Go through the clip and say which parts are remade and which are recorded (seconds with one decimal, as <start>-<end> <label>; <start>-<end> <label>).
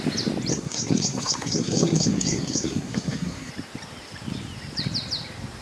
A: 0.0-0.5 recorded; 0.5-3.5 remade; 3.5-5.6 recorded